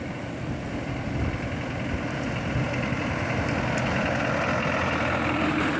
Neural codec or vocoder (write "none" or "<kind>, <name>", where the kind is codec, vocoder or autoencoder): none